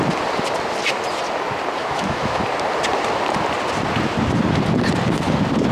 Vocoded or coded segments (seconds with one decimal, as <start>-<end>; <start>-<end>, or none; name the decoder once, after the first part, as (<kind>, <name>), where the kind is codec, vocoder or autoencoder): 1.8-2.4 (autoencoder, DAC-VAE)